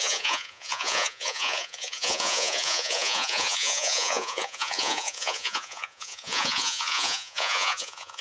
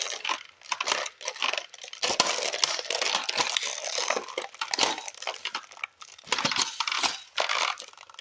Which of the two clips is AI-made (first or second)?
first